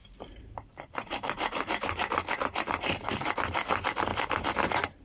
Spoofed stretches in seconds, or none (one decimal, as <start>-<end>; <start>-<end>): 0.0-3.0